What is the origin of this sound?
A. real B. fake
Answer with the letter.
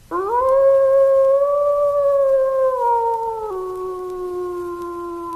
A